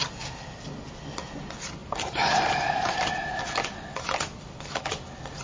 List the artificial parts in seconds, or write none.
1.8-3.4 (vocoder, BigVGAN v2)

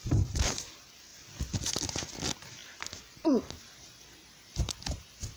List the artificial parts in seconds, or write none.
1.1-1.7 (vocoder, BigVGAN v2)